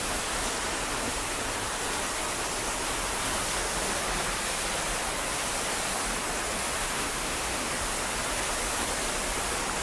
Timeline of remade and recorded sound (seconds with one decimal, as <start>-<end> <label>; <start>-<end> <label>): 0.0-6.8 recorded; 6.8-7.7 remade; 7.7-9.8 recorded